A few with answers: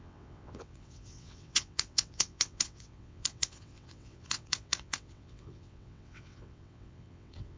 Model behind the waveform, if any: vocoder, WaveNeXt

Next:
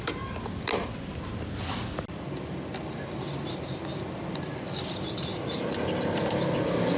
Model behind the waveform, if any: none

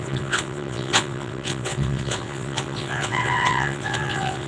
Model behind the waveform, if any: vocoder, WaveNeXt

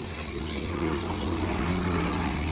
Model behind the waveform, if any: vocoder, WaveNeXt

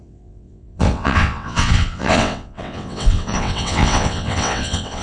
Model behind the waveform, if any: vocoder, WaveNeXt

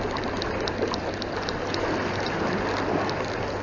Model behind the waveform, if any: none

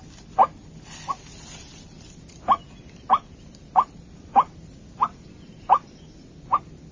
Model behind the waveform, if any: none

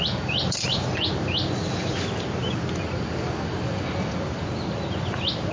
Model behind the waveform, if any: none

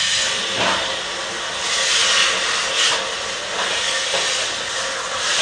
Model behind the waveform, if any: none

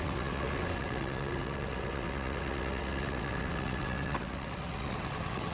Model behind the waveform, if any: vocoder, WaveNeXt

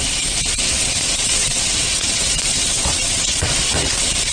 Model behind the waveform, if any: vocoder, WaveNeXt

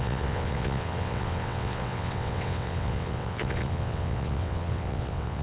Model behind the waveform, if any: vocoder, WaveNeXt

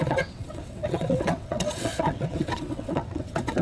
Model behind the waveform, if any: vocoder, WaveNeXt